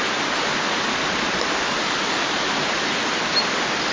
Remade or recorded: recorded